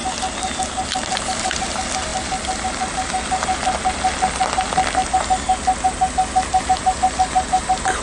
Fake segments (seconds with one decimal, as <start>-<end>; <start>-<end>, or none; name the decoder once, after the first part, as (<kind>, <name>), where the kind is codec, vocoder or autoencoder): 1.4-2.1 (vocoder, BigVGAN v2); 6.6-8.0